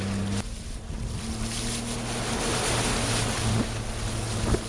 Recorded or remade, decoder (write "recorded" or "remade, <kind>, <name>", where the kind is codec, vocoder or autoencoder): recorded